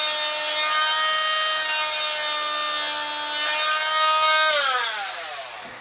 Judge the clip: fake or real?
real